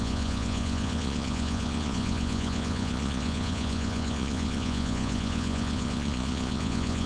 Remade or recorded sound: remade